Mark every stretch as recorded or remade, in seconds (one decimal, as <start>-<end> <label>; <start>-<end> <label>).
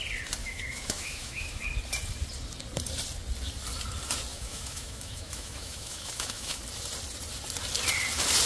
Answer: 0.0-0.4 recorded; 0.4-1.6 remade; 1.6-4.3 recorded; 4.3-6.6 remade; 6.6-8.5 recorded